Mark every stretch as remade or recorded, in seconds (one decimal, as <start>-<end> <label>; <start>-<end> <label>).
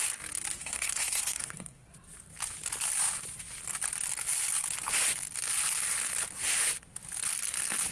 0.0-0.6 recorded; 0.6-1.9 remade; 1.9-7.9 recorded